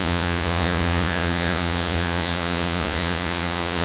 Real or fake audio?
fake